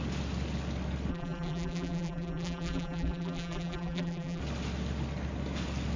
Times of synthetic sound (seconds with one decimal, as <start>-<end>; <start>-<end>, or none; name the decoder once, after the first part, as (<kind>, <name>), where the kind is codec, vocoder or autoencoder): 1.1-4.4 (vocoder, BigVGAN v2)